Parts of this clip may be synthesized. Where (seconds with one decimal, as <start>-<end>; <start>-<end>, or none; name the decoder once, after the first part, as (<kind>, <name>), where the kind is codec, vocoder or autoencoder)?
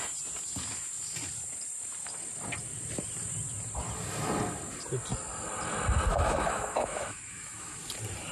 6.1-7.8 (autoencoder, DAC-VAE)